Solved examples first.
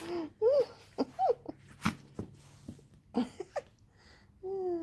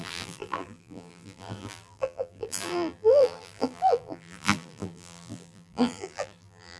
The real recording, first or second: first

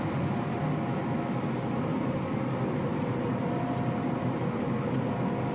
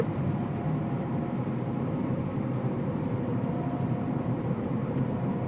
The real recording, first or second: first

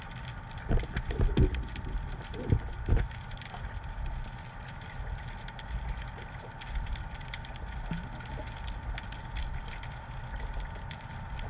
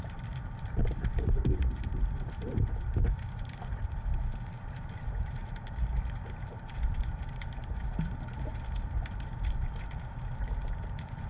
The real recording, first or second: first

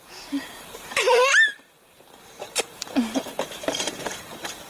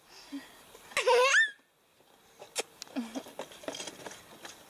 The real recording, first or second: second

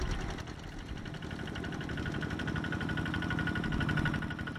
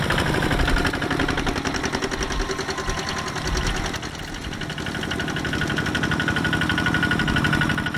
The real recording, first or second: second